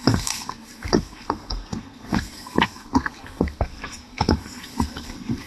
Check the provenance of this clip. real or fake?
fake